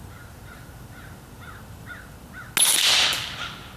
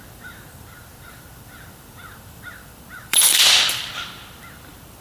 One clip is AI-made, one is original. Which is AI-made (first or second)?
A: second